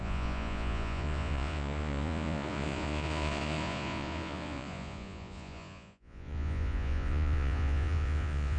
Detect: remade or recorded remade